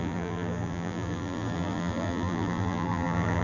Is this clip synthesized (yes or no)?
yes